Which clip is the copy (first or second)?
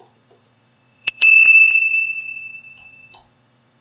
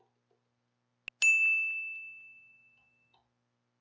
first